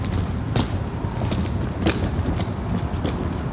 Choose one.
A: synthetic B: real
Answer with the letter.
B